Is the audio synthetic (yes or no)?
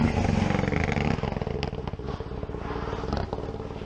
no